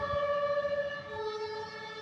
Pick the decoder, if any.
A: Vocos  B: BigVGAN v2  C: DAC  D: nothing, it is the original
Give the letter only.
D